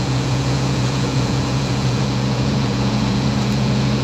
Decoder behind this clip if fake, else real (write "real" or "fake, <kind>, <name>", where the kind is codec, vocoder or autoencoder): fake, vocoder, Vocos